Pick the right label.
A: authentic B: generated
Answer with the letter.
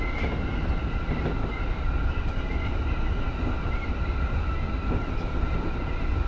A